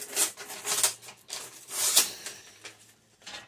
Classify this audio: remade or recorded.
recorded